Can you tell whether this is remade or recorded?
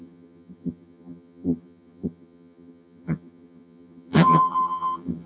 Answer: remade